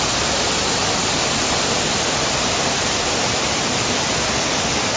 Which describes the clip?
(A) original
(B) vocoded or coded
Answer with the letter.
A